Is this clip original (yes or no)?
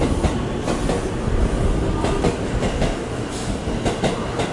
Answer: yes